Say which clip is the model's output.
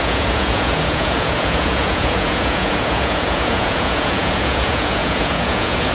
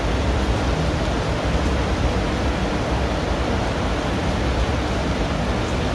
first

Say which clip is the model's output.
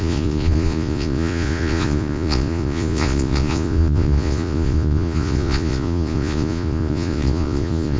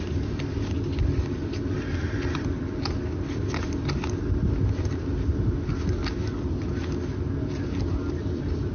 first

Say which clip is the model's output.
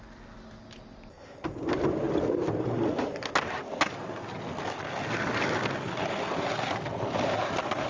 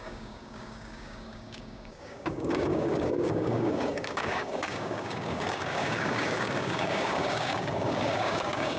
second